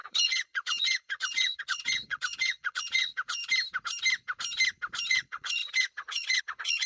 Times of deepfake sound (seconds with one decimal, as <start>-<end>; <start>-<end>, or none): 0.0-3.4; 5.1-6.9